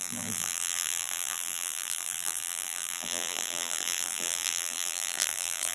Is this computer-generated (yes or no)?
yes